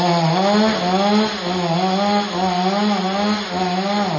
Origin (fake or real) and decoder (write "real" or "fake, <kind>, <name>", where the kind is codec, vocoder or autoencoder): real